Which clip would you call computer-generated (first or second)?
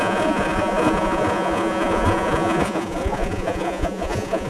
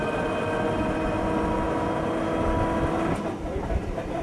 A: first